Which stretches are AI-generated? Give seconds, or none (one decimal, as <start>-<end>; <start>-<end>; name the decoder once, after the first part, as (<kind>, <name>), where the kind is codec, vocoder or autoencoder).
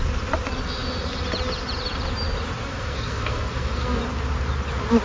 2.7-4.0 (codec, SNAC)